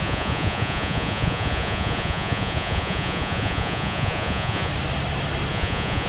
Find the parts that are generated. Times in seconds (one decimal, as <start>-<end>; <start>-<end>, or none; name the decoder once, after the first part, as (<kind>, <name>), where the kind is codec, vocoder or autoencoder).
0.0-4.7 (vocoder, Vocos); 5.5-6.1